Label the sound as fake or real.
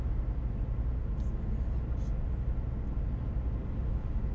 real